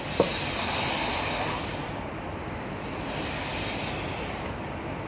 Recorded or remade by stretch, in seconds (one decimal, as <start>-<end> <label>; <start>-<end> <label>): 0.0-5.1 recorded